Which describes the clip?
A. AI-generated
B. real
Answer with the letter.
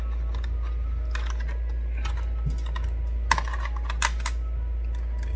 B